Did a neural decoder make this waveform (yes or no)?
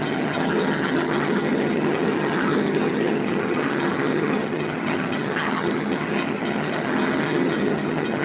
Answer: yes